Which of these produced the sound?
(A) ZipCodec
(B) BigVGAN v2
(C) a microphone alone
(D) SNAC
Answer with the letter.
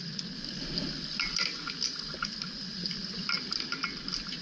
C